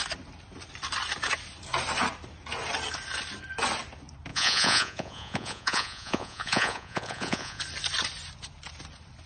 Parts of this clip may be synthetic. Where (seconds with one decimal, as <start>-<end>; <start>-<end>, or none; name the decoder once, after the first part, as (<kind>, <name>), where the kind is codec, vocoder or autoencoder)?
4.3-7.6 (vocoder, Vocos)